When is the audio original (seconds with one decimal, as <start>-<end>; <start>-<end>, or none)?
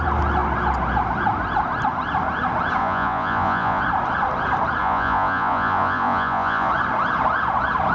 0.0-2.8; 3.8-4.8; 6.7-7.9